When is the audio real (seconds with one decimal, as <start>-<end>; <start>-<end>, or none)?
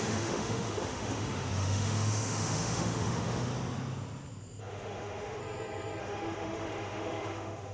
3.5-4.6; 5.4-6.0